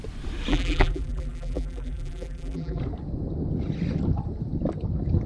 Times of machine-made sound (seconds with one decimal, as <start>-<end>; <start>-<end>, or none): 0.5-2.8